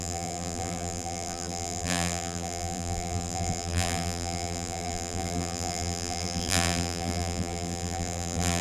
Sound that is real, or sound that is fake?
fake